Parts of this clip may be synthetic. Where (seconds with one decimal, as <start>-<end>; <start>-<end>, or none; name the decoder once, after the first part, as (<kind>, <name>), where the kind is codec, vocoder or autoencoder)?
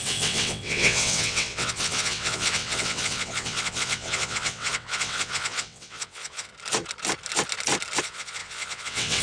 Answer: 0.0-6.5 (vocoder, WaveNeXt); 8.0-9.2